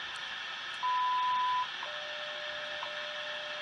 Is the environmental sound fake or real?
real